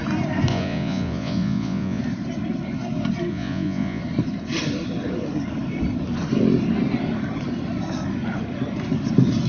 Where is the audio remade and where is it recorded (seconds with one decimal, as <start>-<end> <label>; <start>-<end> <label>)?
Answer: 0.0-0.5 recorded; 0.5-2.0 remade; 2.0-3.3 recorded; 3.3-4.0 remade; 4.0-9.5 recorded